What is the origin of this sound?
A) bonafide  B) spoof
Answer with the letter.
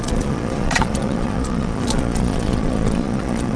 B